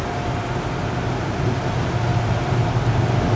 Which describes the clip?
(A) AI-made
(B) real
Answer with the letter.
B